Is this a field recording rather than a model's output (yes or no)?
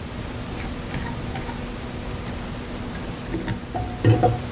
yes